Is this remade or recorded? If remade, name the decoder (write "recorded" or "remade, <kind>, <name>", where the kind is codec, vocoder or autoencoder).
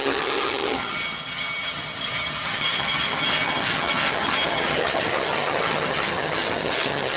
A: remade, vocoder, HiFi-GAN